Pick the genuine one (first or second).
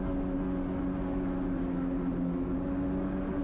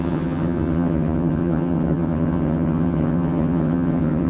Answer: first